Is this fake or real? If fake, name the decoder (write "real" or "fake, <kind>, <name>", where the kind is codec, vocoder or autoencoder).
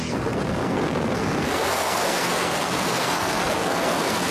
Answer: fake, codec, SNAC